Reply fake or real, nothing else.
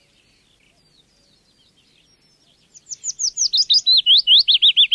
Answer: real